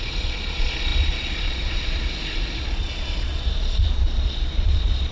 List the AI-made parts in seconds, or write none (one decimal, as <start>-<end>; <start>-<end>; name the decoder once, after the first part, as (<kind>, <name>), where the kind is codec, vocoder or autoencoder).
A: 0.0-5.1 (vocoder, Vocos)